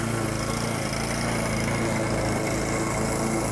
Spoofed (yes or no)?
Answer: no